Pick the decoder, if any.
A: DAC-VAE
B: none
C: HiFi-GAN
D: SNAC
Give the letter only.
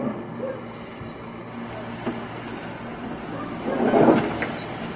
B